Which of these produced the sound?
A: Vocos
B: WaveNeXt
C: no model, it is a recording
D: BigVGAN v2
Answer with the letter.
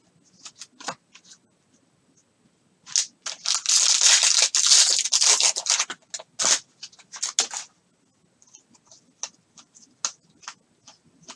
C